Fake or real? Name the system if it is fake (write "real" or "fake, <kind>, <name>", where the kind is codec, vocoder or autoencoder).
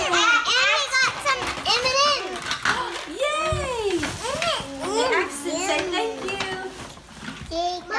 real